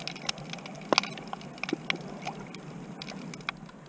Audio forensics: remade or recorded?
recorded